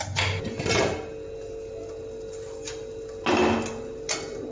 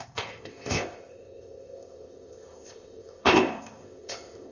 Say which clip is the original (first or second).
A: first